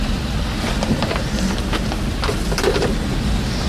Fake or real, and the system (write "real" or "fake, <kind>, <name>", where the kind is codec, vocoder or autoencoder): real